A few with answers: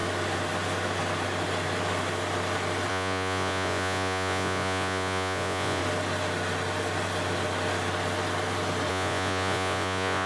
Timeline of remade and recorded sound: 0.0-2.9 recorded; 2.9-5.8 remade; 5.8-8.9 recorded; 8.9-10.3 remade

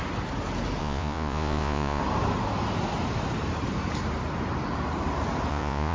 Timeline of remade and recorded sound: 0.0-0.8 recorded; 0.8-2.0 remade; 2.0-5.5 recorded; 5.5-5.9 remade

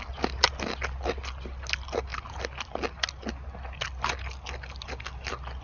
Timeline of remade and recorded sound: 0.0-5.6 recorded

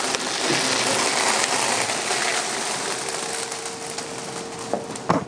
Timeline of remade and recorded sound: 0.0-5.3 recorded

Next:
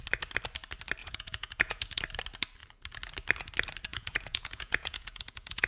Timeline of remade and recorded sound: 0.0-1.0 recorded; 1.0-2.0 remade; 2.0-3.9 recorded; 3.9-5.7 remade